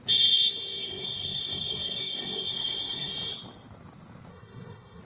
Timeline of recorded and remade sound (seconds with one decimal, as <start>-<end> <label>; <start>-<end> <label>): 0.0-0.8 recorded; 0.8-3.1 remade; 3.1-4.3 recorded; 4.3-5.0 remade